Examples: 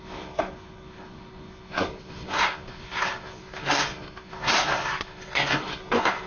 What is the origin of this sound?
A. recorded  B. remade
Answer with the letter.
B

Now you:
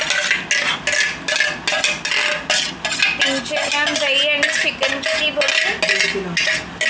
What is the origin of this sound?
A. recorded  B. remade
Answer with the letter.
A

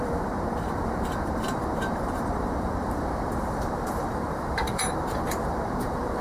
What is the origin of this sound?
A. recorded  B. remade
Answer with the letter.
B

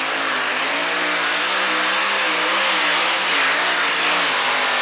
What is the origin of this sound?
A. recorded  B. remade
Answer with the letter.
A